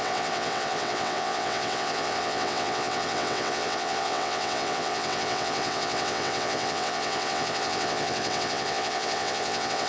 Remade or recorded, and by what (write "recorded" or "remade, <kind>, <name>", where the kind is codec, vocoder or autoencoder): remade, vocoder, WaveNeXt